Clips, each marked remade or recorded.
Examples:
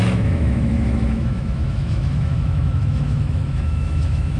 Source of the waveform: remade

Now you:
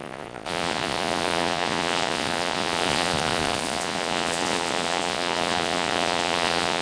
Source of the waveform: remade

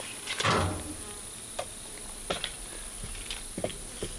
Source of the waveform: recorded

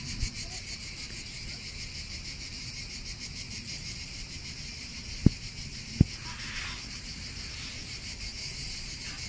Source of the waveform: recorded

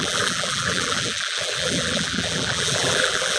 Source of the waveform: remade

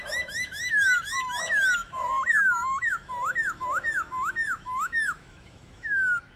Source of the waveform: remade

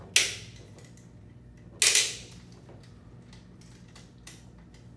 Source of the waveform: recorded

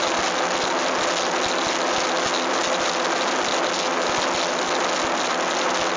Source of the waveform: recorded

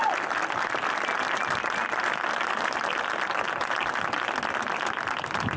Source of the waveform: recorded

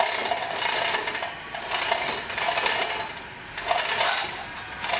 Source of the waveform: recorded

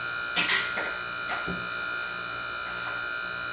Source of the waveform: recorded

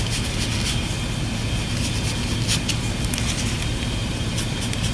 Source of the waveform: recorded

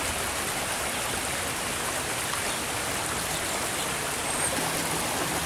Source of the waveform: recorded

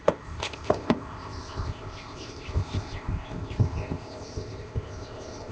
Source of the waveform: remade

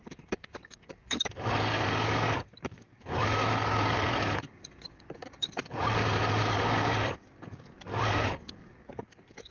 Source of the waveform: remade